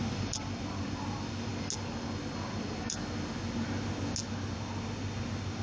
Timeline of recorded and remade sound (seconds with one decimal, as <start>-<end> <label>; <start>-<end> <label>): 0.0-5.6 recorded